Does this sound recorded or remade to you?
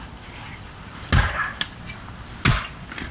recorded